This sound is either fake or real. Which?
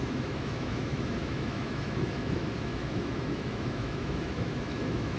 fake